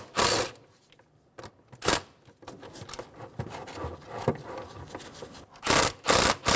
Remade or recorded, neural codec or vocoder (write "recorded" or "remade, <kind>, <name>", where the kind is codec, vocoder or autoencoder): recorded